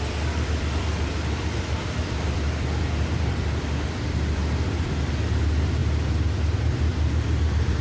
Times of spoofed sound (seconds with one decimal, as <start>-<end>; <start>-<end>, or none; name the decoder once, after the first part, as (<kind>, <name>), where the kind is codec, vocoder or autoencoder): 0.0-5.8 (vocoder, BigVGAN v2); 6.7-7.8